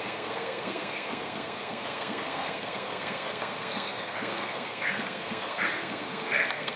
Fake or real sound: fake